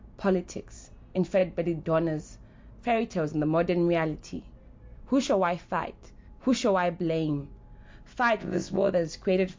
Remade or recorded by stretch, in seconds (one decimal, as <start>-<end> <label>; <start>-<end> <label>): 0.0-8.4 recorded; 8.4-8.9 remade; 8.9-9.6 recorded